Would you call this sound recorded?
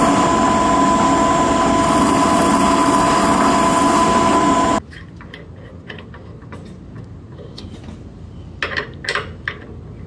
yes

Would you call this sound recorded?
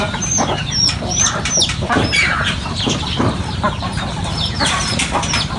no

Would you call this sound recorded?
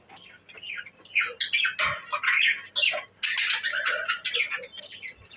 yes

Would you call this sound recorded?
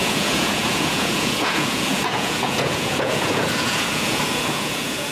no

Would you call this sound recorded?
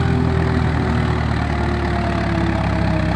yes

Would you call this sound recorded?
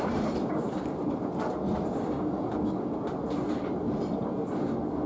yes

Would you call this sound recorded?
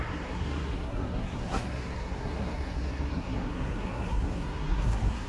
no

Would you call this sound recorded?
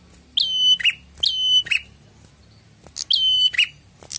yes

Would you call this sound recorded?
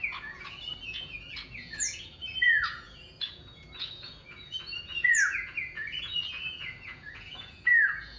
no